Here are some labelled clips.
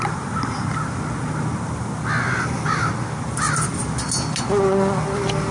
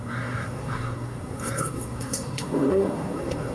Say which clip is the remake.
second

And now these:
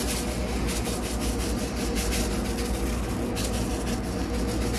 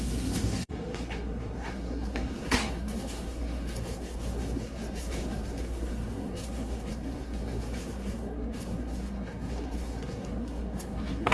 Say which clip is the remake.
second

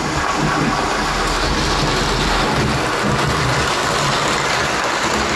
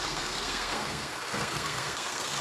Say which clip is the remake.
second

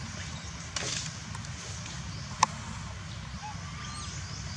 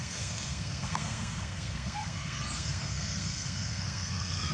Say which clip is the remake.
second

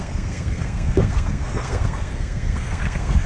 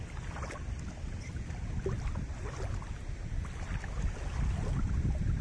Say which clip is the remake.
first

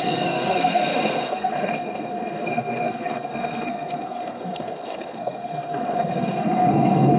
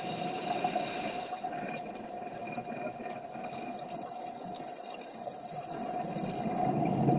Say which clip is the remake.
first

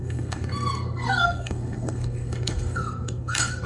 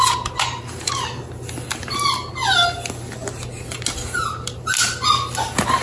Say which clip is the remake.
first